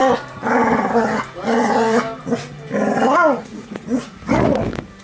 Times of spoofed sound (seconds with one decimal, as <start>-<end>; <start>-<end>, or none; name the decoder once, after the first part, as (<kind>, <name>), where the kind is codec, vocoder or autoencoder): 3.5-4.6 (vocoder, Vocos)